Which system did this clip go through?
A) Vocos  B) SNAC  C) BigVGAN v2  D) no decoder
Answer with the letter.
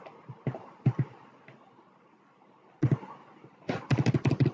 D